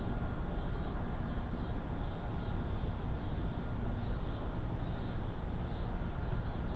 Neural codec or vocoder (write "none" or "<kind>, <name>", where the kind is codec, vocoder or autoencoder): none